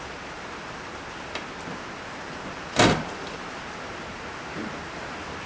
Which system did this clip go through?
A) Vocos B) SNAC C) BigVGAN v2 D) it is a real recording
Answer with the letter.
D